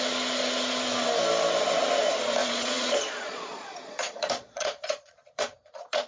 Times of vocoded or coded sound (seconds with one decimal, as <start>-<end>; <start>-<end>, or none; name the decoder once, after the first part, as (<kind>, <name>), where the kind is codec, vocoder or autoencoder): 2.4-6.1 (vocoder, Vocos)